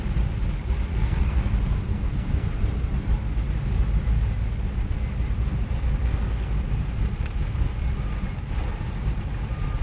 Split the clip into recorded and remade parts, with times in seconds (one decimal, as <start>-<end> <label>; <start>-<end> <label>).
0.0-0.9 recorded; 0.9-1.5 remade; 1.5-1.9 recorded; 1.9-2.6 remade; 2.6-6.0 recorded; 6.0-6.5 remade; 6.5-9.8 recorded